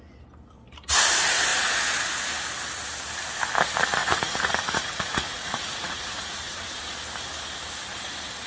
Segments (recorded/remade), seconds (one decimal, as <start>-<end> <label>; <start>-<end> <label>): 0.0-4.0 recorded; 4.0-6.8 remade; 6.8-8.5 recorded

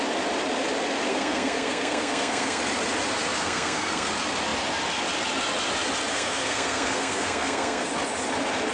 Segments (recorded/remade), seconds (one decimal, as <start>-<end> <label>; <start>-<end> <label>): 0.0-1.1 recorded; 1.1-2.6 remade; 2.6-3.4 recorded; 3.4-4.1 remade; 4.1-6.1 recorded; 6.1-7.9 remade; 7.9-8.7 recorded

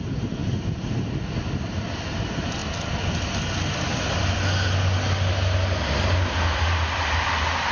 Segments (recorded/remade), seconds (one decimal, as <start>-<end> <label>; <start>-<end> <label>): 0.0-0.4 remade; 0.4-1.6 recorded; 1.6-2.6 remade; 2.6-7.2 recorded; 7.2-7.7 remade

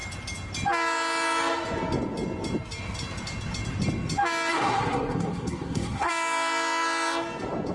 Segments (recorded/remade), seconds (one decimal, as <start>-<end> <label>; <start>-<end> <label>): 0.0-4.5 recorded; 4.5-6.1 remade; 6.1-7.7 recorded

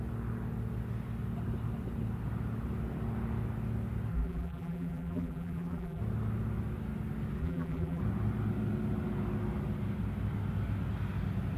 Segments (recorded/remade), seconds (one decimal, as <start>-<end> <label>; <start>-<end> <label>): 0.0-4.1 recorded; 4.1-6.0 remade; 6.0-7.4 recorded; 7.4-8.0 remade; 8.0-11.6 recorded